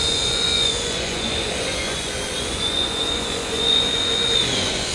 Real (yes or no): no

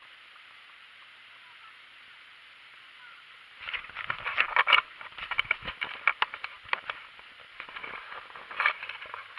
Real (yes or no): yes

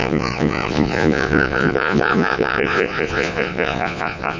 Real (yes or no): no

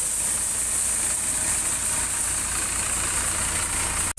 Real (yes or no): yes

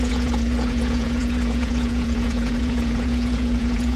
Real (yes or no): no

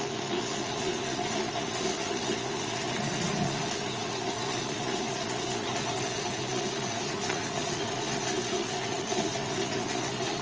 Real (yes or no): no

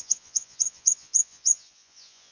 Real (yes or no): no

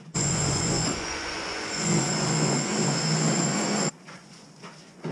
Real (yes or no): no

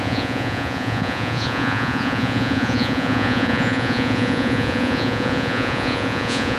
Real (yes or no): no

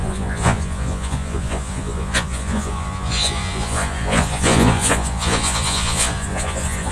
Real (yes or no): no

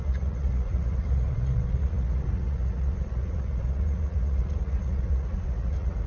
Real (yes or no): no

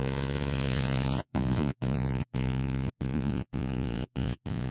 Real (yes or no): no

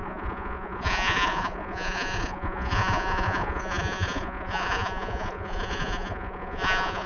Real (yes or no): no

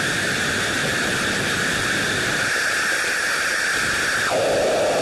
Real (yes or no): yes